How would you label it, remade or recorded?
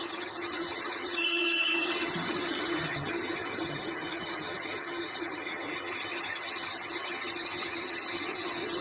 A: remade